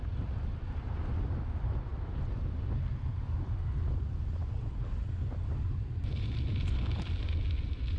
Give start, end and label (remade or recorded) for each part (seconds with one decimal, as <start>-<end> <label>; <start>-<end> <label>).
0.0-8.0 recorded